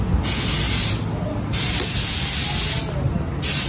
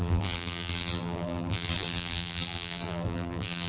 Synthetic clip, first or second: second